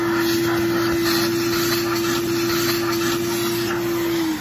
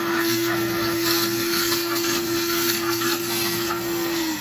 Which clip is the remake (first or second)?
second